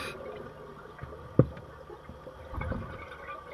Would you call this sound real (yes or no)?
yes